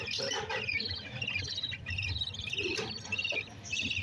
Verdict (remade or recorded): remade